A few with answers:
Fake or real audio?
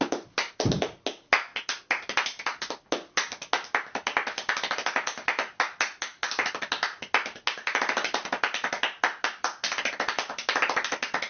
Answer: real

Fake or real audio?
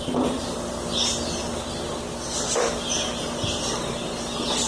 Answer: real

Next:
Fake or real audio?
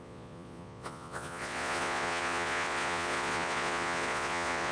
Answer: fake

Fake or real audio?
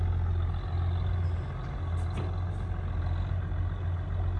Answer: real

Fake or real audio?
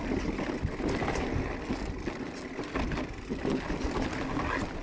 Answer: real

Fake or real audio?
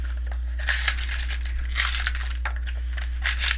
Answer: real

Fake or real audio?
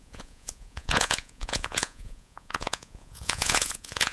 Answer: fake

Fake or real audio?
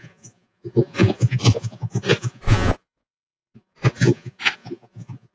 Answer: fake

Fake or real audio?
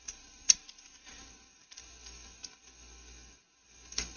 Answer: real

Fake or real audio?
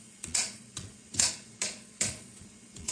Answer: fake